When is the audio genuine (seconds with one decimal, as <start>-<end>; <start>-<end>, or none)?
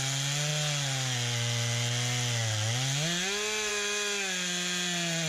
0.0-5.3